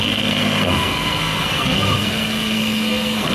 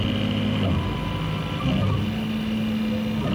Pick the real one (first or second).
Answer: second